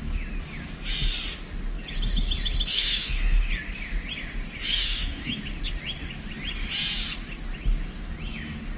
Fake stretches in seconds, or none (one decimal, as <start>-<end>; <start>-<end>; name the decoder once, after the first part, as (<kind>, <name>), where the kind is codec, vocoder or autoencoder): 2.7-3.5 (autoencoder, DAC-VAE); 4.6-5.4